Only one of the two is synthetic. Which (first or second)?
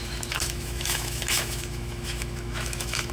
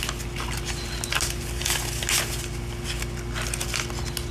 first